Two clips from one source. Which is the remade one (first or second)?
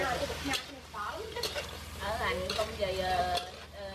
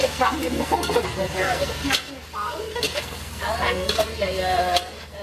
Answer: second